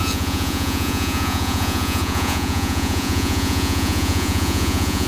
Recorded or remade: remade